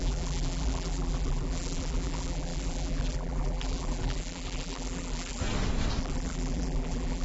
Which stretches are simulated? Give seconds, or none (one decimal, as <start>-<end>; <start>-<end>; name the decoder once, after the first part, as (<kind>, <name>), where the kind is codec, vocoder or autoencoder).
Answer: 0.0-5.4 (vocoder, BigVGAN v2); 6.0-7.2